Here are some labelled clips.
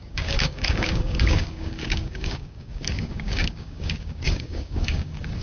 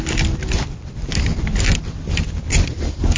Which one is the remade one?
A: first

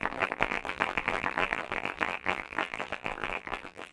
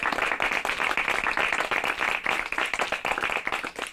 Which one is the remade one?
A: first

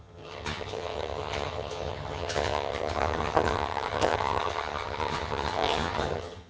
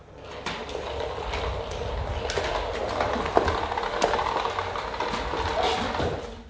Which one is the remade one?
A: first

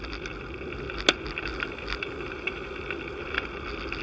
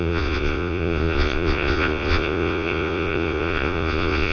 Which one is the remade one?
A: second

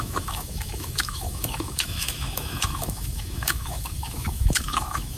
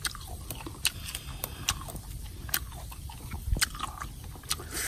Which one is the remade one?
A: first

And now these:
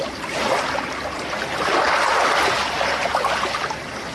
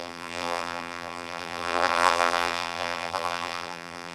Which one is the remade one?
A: second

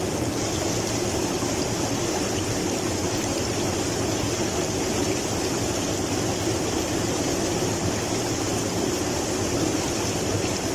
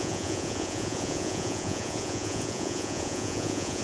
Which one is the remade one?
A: second